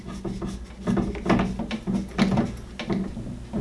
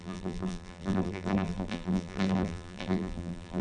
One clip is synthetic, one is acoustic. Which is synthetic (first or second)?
second